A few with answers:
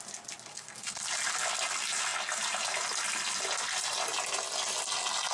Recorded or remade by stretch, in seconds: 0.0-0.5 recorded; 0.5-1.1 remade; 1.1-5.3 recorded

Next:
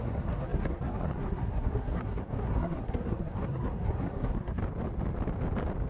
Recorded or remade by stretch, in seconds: 0.0-4.6 remade; 4.6-5.9 recorded